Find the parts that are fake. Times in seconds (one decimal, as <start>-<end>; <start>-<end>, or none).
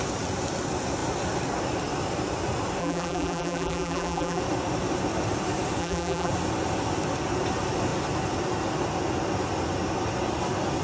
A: 2.8-4.4; 5.8-6.3